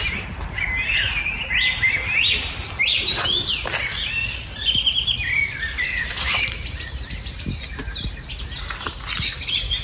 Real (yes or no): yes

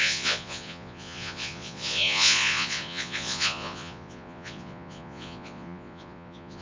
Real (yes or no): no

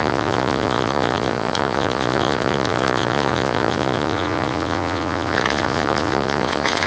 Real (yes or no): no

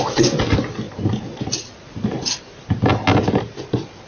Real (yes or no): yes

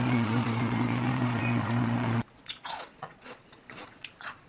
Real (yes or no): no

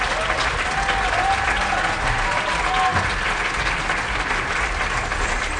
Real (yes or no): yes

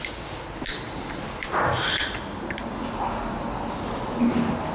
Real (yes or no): yes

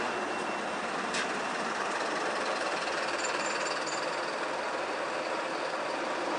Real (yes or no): yes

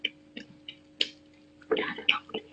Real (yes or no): yes